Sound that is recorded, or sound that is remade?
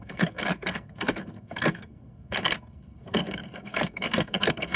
remade